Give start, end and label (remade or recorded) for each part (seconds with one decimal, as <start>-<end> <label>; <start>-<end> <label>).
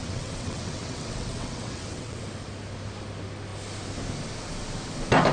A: 0.0-2.2 remade; 2.2-5.3 recorded